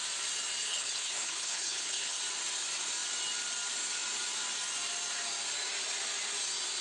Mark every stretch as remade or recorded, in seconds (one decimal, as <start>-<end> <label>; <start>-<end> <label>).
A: 0.0-0.6 recorded; 0.6-2.2 remade; 2.2-6.8 recorded

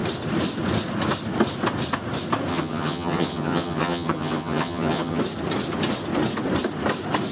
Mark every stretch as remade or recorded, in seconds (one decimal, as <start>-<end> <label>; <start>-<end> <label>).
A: 0.0-2.5 recorded; 2.5-5.2 remade; 5.2-7.3 recorded

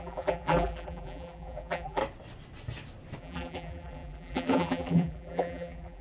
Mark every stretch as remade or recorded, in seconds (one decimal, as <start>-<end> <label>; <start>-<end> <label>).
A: 0.0-2.0 remade; 2.0-3.2 recorded; 3.2-6.0 remade

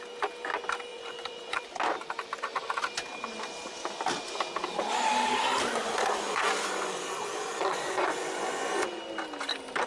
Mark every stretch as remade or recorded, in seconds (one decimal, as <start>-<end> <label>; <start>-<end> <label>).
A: 0.0-0.9 recorded; 0.9-1.6 remade; 1.6-5.8 recorded; 5.8-9.0 remade; 9.0-9.9 recorded

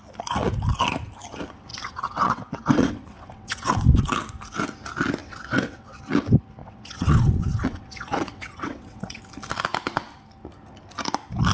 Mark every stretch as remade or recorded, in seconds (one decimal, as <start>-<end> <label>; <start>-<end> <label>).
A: 0.0-1.7 recorded; 1.7-4.0 remade; 4.0-5.2 recorded; 5.2-6.0 remade; 6.0-6.6 recorded; 6.6-9.2 remade; 9.2-11.5 recorded

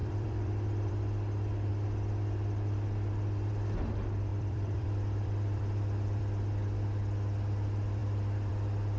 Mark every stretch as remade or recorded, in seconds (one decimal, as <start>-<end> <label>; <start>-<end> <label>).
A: 0.0-0.9 remade; 0.9-4.3 recorded; 4.3-6.2 remade; 6.2-9.0 recorded